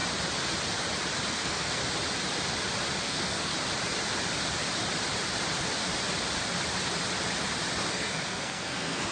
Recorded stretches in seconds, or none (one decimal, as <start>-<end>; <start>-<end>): 0.0-1.3; 1.8-3.0; 3.5-7.9